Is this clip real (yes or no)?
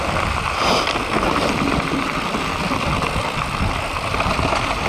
yes